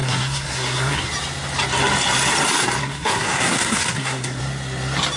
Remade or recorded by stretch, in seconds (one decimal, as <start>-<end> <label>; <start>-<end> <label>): 0.0-1.1 remade; 1.1-2.8 recorded; 2.8-4.4 remade; 4.4-5.2 recorded